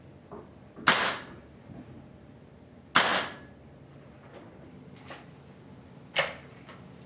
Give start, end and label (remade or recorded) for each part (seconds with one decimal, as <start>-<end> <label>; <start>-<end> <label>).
0.0-7.1 recorded